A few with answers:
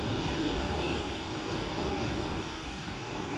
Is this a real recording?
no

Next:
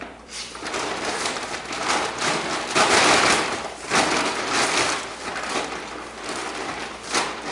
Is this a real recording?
no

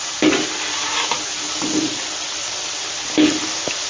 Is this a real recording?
yes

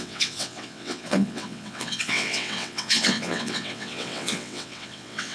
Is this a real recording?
no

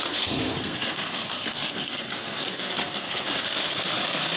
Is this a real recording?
no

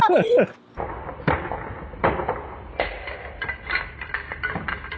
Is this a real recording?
yes